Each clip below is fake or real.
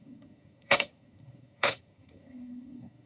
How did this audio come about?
fake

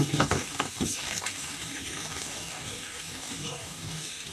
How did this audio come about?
fake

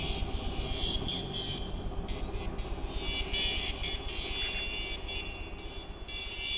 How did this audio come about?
real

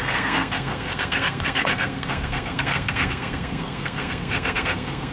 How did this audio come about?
fake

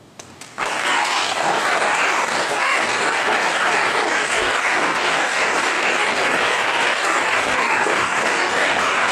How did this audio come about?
fake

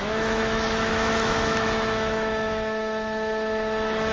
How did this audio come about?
fake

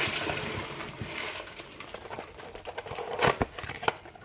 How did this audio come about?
fake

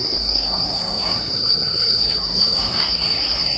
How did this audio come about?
fake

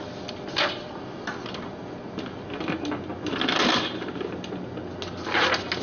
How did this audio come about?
real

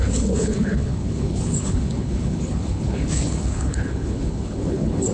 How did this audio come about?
fake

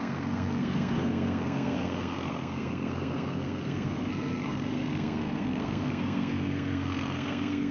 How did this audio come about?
fake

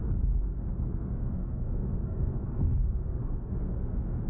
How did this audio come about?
fake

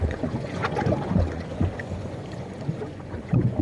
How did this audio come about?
fake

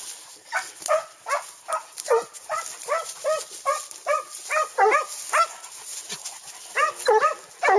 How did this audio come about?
real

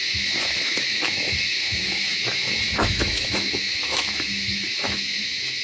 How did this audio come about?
fake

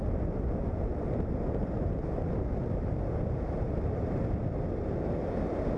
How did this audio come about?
real